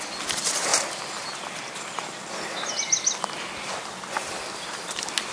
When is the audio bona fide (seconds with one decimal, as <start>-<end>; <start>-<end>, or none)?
0.0-5.3